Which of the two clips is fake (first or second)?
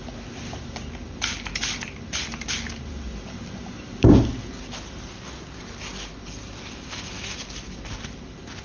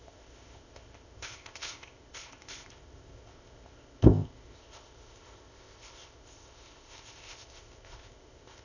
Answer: second